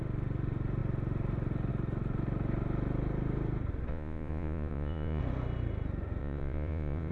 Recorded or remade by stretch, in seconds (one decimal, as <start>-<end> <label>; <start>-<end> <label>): 0.0-3.9 recorded; 3.9-5.2 remade; 5.2-6.2 recorded; 6.2-7.1 remade